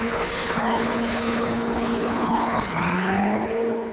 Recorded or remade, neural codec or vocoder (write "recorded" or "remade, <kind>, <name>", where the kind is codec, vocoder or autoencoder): remade, codec, HILCodec